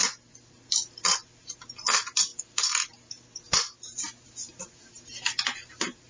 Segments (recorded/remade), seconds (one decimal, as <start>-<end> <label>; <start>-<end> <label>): 0.0-6.1 recorded